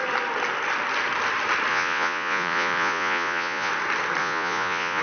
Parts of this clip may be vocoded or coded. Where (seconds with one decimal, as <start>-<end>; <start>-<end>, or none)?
1.7-3.7; 4.2-5.0